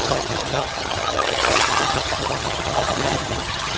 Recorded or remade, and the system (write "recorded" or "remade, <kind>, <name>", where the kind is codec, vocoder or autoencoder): remade, vocoder, HiFi-GAN